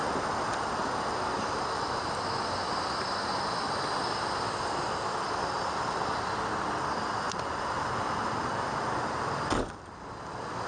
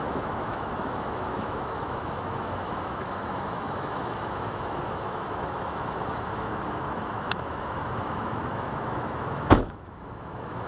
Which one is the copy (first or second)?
second